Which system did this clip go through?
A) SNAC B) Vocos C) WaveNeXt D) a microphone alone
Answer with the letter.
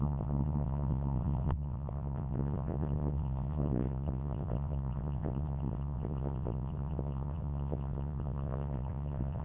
C